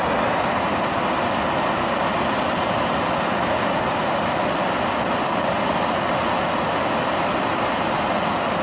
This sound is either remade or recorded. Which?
recorded